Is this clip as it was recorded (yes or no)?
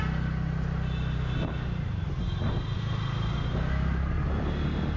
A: yes